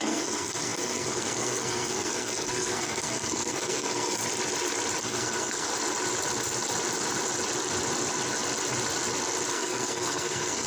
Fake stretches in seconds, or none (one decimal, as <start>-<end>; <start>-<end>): 0.0-4.2; 5.0-5.7; 9.5-10.7